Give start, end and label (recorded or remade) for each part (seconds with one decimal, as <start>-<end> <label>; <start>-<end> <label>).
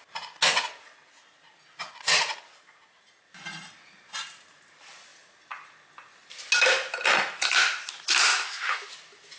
0.0-8.3 recorded; 8.3-8.9 remade; 8.9-9.4 recorded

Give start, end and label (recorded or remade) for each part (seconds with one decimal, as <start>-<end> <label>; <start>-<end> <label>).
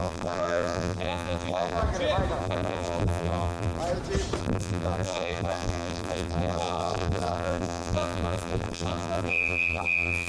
0.0-1.8 remade; 1.8-2.4 recorded; 2.4-3.8 remade; 3.8-4.4 recorded; 4.4-10.3 remade